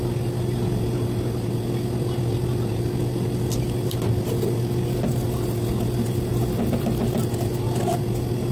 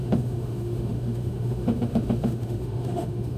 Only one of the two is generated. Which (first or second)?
second